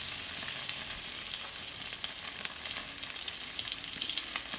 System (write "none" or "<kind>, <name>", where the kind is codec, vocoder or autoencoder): none